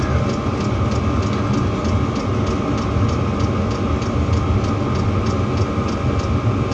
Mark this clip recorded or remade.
recorded